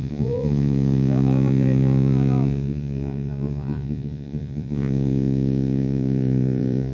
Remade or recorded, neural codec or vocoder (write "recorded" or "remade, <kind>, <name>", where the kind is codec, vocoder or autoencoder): remade, vocoder, Vocos